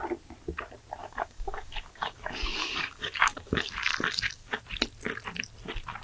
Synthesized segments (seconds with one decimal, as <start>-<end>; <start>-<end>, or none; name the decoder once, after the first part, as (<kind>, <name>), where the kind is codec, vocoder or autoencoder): 1.0-4.6 (codec, DAC)